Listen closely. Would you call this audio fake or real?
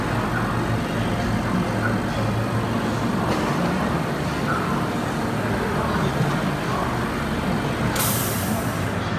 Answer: real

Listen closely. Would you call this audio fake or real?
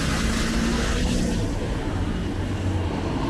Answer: real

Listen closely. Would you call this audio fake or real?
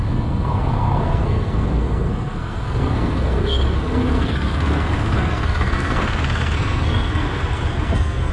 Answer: fake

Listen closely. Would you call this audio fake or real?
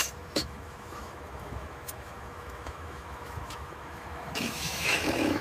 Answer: fake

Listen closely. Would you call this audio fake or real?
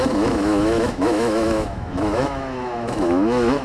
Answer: fake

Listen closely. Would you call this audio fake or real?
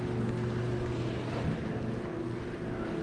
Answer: real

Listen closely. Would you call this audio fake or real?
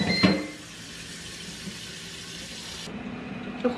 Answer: fake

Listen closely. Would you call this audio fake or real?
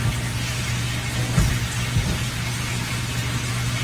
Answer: real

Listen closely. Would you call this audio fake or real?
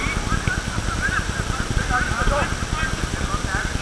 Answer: real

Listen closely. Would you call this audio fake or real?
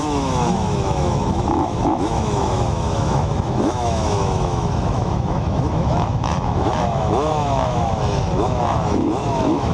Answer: fake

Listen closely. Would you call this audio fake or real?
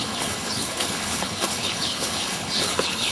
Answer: fake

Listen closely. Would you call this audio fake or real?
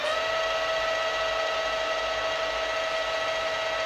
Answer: real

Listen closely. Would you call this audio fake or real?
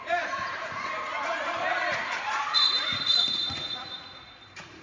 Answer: fake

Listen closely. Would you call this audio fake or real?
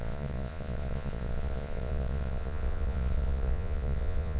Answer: fake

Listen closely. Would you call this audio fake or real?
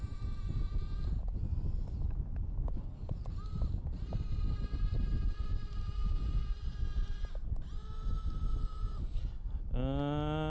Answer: real